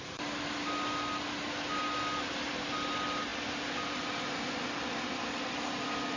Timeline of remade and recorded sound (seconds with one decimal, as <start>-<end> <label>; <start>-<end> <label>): 0.0-6.2 recorded